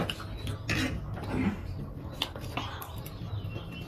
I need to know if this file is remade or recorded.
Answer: recorded